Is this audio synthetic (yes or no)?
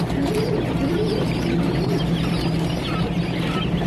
no